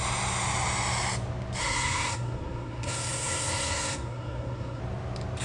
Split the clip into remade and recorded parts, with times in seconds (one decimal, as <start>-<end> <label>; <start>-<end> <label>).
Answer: 0.0-1.6 recorded; 1.6-4.8 remade; 4.8-5.4 recorded